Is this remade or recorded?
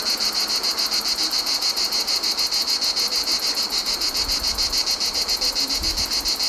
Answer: recorded